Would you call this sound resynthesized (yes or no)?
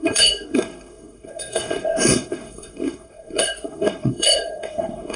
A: yes